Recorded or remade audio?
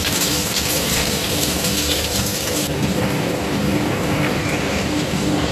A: remade